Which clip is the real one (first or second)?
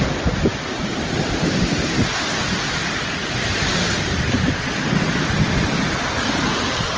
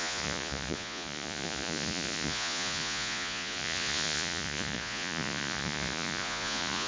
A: first